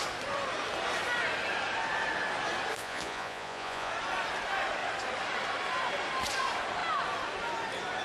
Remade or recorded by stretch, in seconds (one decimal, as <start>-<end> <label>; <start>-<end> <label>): 0.0-2.8 recorded; 2.8-3.9 remade; 3.9-8.0 recorded